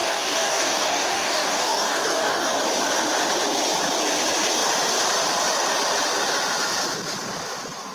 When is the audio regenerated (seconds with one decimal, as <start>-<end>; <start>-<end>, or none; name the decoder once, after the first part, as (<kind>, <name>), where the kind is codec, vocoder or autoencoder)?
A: 0.0-2.6 (codec, DAC)